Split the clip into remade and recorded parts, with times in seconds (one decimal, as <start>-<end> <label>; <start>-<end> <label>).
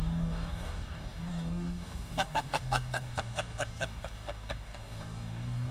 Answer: 0.0-5.7 remade